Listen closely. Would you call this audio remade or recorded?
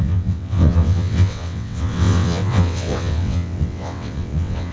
remade